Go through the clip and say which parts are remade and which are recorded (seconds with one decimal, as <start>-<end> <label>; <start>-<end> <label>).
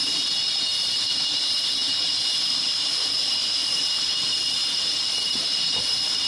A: 0.0-6.3 recorded